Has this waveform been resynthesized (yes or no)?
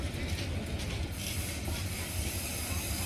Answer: yes